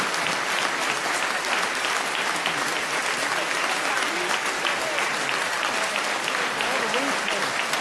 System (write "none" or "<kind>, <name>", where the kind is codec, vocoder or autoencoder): vocoder, BigVGAN v2